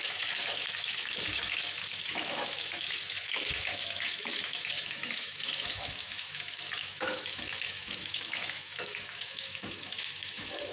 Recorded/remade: remade